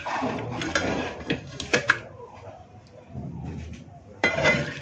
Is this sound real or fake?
fake